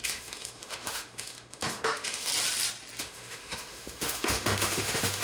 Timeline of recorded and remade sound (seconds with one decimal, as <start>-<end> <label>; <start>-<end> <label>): 0.0-2.3 remade; 2.3-3.0 recorded; 3.0-5.2 remade